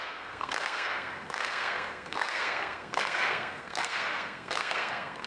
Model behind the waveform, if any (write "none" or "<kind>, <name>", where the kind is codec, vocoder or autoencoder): codec, SNAC